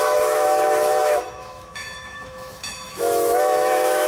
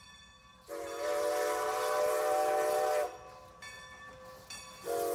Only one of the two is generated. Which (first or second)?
first